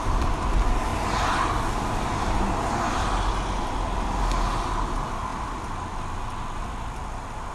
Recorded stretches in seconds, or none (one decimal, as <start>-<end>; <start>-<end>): 0.0-7.5